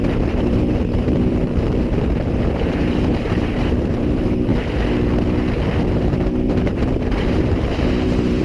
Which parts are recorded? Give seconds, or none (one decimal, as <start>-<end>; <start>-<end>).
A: 4.5-5.9